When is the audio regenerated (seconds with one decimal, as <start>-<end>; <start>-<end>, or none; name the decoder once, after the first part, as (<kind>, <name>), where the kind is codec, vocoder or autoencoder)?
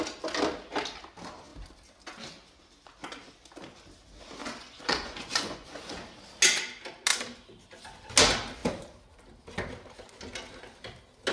4.4-6.0 (vocoder, Vocos)